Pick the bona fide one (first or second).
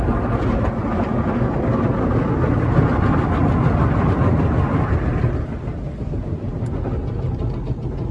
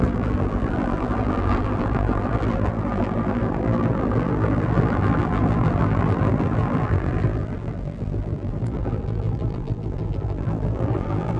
first